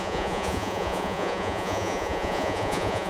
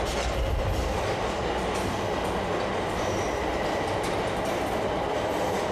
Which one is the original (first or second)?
second